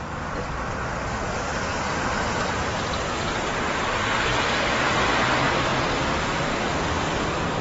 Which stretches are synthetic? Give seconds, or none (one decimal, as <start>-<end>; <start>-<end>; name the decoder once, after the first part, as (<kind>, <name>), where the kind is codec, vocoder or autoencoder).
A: none